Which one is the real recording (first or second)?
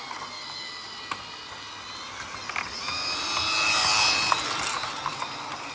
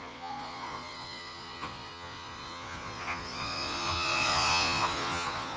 first